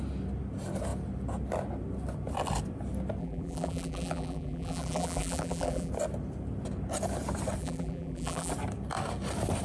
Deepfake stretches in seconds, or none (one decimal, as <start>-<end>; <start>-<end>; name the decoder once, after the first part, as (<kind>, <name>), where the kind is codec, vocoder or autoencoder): 3.2-5.9 (vocoder, BigVGAN v2); 7.6-8.5